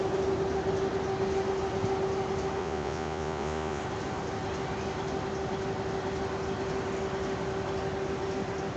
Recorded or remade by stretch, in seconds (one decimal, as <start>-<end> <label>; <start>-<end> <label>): 0.0-2.6 recorded; 2.6-3.8 remade; 3.8-8.8 recorded

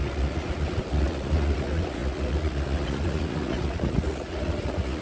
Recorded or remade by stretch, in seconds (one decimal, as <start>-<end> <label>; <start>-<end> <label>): 0.0-5.0 remade

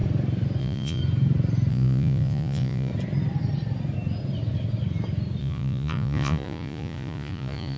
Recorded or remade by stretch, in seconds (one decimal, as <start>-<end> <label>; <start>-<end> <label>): 0.0-0.6 recorded; 0.6-1.0 remade; 1.0-1.7 recorded; 1.7-2.9 remade; 2.9-5.4 recorded; 5.4-7.8 remade

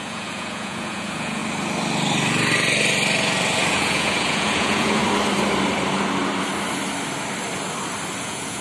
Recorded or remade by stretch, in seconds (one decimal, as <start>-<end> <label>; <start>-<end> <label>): 0.0-1.4 remade; 1.4-3.7 recorded; 3.7-5.0 remade; 5.0-8.2 recorded; 8.2-8.6 remade

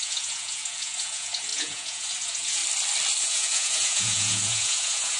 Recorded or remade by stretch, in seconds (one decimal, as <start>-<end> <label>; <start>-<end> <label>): 0.0-2.6 remade; 2.6-3.2 recorded; 3.2-5.2 remade